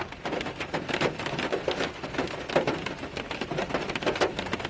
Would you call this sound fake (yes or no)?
no